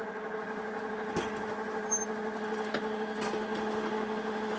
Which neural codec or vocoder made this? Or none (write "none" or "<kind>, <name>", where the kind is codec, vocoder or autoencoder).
none